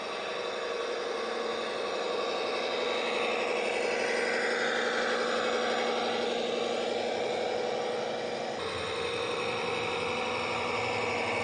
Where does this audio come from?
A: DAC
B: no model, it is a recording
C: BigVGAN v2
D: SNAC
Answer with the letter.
B